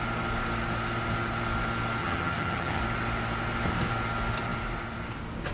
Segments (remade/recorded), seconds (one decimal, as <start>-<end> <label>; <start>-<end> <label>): 0.0-2.0 recorded; 2.0-2.8 remade; 2.8-5.5 recorded